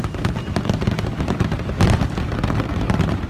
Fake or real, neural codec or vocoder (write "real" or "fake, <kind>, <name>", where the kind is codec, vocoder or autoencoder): real